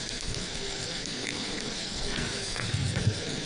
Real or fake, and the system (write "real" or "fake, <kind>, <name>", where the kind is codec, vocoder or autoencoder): fake, codec, SNAC